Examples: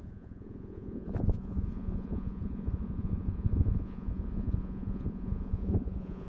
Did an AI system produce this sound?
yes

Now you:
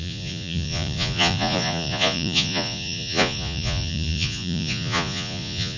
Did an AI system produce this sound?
yes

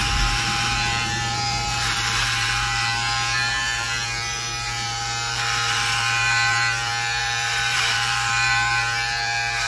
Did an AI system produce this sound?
yes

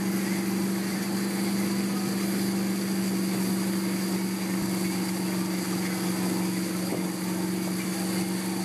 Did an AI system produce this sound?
no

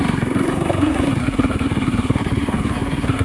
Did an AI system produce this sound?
yes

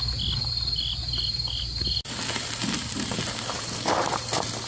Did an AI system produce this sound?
no